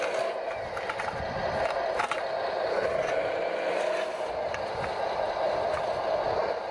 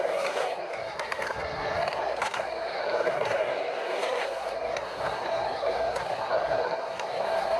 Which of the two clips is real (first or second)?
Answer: first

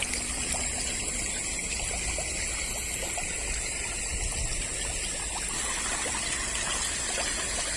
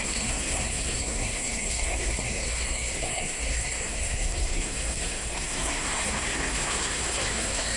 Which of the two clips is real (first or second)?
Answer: first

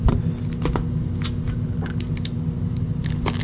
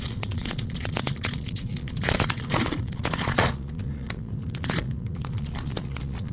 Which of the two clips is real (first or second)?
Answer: first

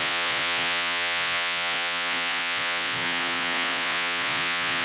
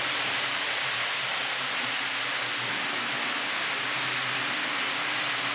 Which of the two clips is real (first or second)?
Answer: second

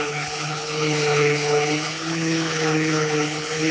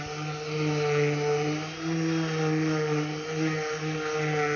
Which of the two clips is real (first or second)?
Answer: second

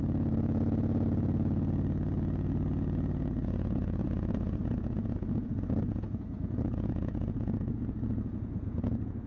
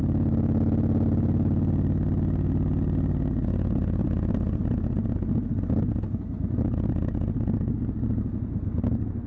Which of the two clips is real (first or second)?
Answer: second